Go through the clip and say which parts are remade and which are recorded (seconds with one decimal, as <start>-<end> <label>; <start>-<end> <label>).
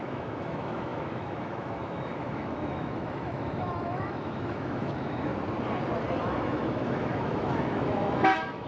0.0-5.3 remade; 5.3-6.2 recorded; 6.2-8.7 remade